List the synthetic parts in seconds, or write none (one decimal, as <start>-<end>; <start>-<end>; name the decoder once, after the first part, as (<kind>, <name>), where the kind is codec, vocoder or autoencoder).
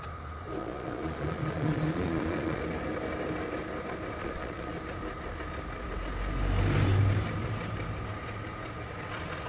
0.6-2.6 (vocoder, Vocos); 4.2-4.8